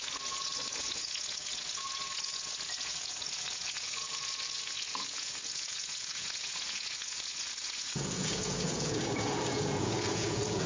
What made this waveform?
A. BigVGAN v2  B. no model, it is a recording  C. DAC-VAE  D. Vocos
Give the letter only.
D